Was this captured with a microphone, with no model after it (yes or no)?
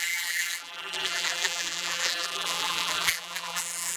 no